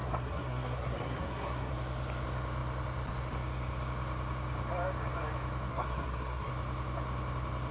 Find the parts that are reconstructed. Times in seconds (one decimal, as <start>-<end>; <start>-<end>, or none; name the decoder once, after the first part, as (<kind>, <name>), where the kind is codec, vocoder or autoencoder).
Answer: 0.0-1.7 (codec, SNAC); 5.7-6.5